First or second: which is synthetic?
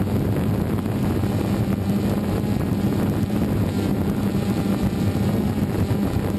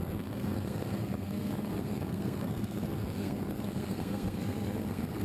second